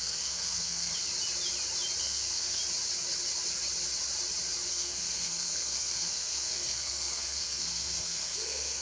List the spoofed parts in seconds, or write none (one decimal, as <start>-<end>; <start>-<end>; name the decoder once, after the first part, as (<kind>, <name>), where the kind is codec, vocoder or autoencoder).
0.0-0.9 (codec, SNAC); 2.0-2.6; 4.7-8.8